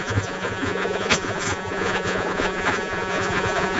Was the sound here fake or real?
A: fake